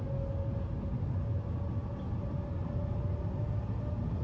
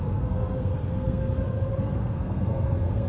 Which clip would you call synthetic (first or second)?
second